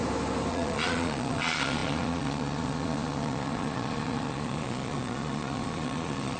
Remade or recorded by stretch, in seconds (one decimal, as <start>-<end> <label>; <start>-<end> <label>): 0.0-0.5 recorded; 0.5-6.4 remade